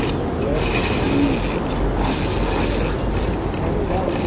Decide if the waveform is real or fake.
real